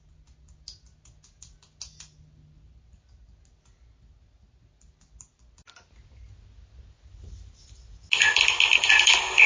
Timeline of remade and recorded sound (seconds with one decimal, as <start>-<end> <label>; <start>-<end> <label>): 0.0-9.5 recorded